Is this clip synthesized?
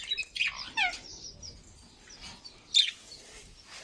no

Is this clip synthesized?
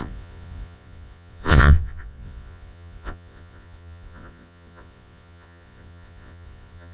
yes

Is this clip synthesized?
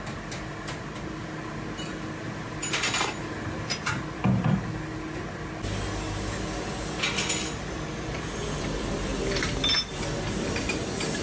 no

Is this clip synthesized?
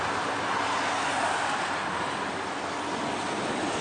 no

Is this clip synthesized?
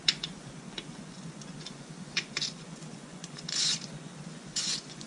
yes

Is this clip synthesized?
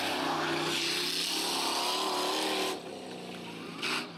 no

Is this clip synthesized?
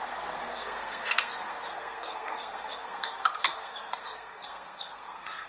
yes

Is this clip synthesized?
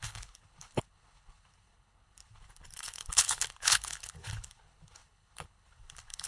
yes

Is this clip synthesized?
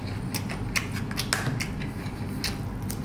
no